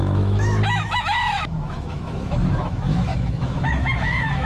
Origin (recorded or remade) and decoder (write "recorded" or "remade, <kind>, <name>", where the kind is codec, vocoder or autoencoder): remade, autoencoder, DAC-VAE